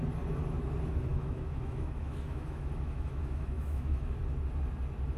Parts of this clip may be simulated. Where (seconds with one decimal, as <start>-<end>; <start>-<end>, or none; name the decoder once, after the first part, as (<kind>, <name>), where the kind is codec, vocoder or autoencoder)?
1.1-4.2 (autoencoder, DAC-VAE)